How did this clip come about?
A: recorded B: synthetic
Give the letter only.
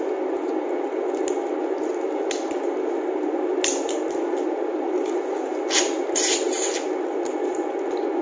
A